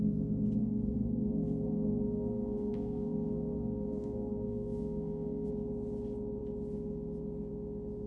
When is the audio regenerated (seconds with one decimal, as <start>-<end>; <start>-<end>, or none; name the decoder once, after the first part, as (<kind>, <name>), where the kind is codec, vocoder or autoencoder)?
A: 0.6-5.5 (codec, SNAC)